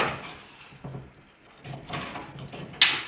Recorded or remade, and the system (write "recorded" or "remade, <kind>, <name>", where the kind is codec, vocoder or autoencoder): recorded